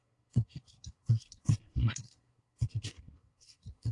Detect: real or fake fake